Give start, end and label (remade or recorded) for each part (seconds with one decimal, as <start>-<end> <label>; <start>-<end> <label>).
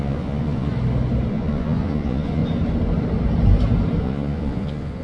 0.0-0.7 remade; 0.7-1.3 recorded; 1.3-2.4 remade; 2.4-4.0 recorded; 4.0-5.0 remade